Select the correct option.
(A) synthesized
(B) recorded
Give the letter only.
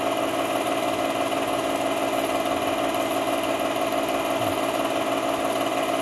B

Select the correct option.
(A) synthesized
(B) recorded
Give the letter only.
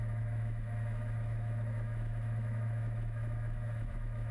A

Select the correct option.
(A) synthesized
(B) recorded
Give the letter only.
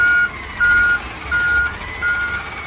B